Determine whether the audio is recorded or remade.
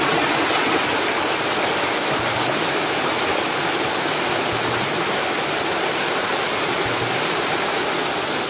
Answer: recorded